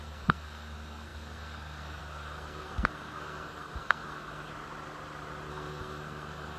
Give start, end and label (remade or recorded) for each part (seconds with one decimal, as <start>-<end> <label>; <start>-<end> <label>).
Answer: 0.0-4.5 remade; 4.5-5.5 recorded; 5.5-6.6 remade